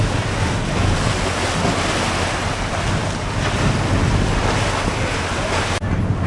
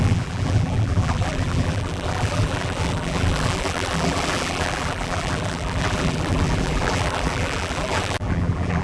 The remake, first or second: second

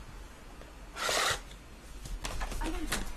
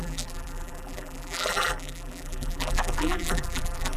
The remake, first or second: second